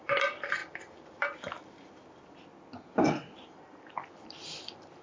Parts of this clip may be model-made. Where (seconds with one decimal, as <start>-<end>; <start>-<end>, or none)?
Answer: 0.0-0.6; 3.6-5.0